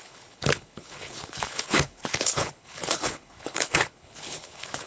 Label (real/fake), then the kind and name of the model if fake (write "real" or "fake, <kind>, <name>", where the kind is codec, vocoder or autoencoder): fake, codec, HILCodec